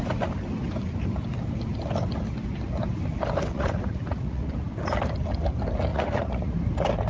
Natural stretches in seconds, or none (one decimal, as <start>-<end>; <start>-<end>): 0.0-3.5; 4.5-5.9; 6.5-7.1